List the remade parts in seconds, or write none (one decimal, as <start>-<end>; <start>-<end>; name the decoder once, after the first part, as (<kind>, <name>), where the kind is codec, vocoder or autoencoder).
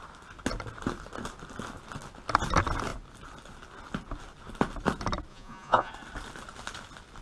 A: 5.3-5.9 (vocoder, Vocos)